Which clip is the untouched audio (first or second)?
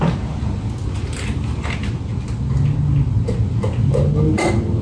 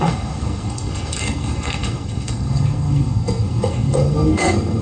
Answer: first